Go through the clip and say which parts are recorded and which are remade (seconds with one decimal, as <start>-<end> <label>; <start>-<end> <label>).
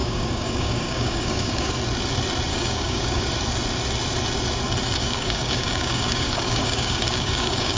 0.0-1.7 remade; 1.7-2.5 recorded; 2.5-3.3 remade; 3.3-5.0 recorded; 5.0-7.8 remade